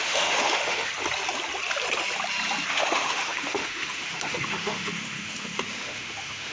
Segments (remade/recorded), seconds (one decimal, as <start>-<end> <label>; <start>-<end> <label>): 0.0-0.9 remade; 0.9-2.7 recorded; 2.7-6.5 remade